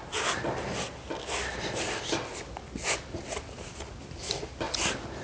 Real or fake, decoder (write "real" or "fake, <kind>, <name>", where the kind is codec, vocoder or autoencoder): real